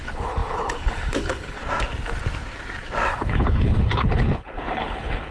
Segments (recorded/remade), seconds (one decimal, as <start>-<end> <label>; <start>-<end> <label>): 0.0-1.6 remade; 1.6-3.1 recorded; 3.1-5.3 remade